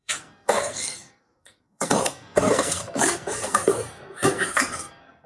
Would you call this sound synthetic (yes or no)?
yes